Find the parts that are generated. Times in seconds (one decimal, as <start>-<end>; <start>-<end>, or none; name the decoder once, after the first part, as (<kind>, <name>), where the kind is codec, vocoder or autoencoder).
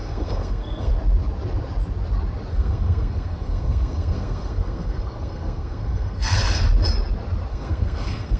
0.0-0.9 (codec, SNAC); 2.5-6.6; 7.5-8.4